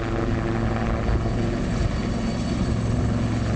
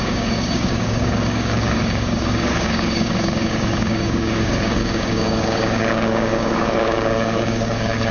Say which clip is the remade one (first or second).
second